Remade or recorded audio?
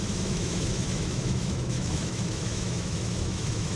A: remade